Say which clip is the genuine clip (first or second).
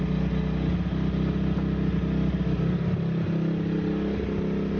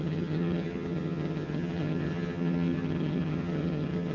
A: first